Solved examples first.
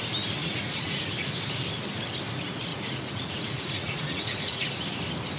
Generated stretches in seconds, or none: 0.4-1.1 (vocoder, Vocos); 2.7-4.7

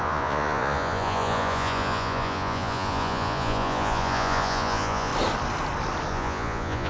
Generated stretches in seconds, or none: 0.0-5.1 (vocoder, Vocos); 6.1-6.9

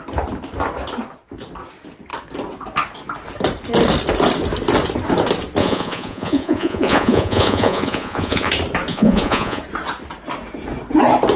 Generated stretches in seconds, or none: 5.6-8.5 (vocoder, Vocos); 8.9-9.6

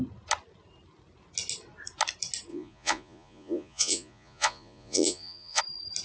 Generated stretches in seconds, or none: 2.5-5.6 (vocoder, Vocos)